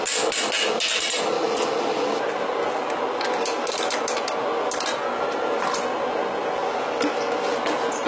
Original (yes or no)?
yes